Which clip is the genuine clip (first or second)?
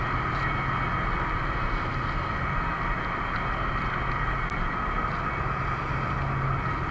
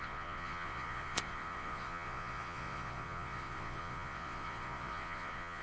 first